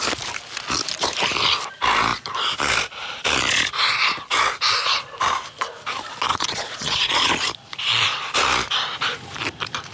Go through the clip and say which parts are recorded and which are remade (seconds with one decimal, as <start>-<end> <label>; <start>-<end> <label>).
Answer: 0.0-6.3 recorded; 6.3-7.3 remade; 7.3-9.9 recorded